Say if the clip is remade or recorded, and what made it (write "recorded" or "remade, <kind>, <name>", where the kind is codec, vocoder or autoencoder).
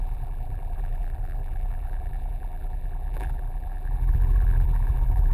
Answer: remade, vocoder, BigVGAN v2